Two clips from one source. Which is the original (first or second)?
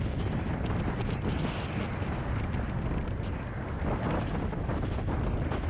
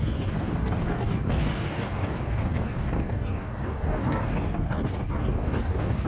first